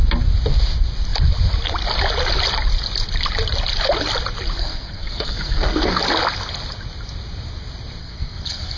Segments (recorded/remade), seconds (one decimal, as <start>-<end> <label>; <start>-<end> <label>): 0.0-4.6 recorded; 4.6-6.0 remade; 6.0-8.0 recorded; 8.0-8.8 remade